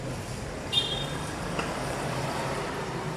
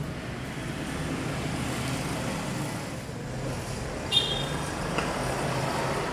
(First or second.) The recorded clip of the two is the second